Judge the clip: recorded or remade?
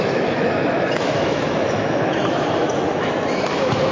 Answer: remade